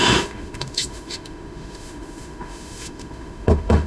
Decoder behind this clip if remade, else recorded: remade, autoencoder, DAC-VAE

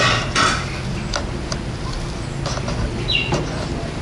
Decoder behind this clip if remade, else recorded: recorded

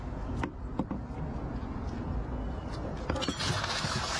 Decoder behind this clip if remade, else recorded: recorded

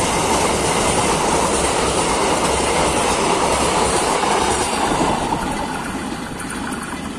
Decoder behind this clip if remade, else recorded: recorded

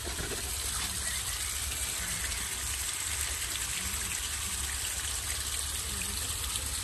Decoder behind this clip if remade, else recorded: recorded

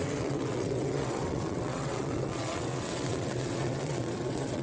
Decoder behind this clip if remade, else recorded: remade, vocoder, WaveNeXt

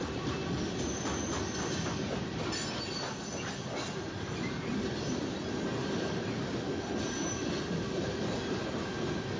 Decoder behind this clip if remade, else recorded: recorded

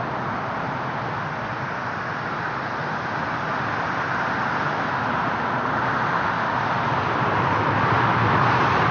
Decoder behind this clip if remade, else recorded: recorded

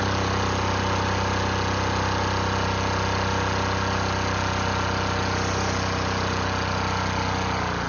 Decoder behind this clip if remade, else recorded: recorded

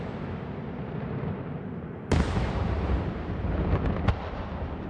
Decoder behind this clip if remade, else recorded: recorded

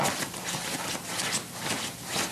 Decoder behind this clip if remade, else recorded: recorded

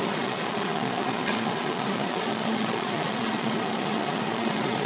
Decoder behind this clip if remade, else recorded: remade, vocoder, Vocos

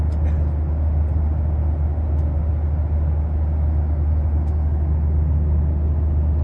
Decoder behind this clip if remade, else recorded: recorded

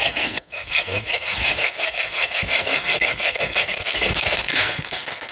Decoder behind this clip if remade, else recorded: remade, codec, SNAC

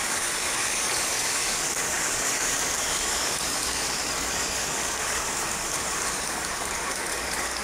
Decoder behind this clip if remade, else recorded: remade, codec, DAC